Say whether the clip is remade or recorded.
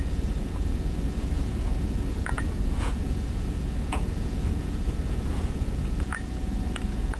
remade